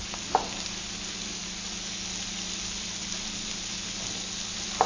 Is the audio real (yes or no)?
yes